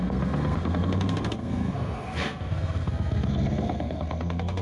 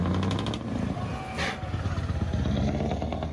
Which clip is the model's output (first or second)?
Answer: first